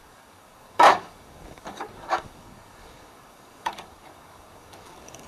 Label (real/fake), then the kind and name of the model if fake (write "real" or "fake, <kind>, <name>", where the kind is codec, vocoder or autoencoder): fake, codec, DAC